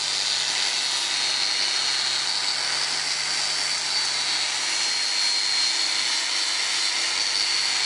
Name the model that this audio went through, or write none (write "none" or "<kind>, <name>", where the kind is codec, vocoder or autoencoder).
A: none